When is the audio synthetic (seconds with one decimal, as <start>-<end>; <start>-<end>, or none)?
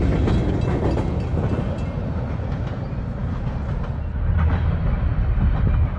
none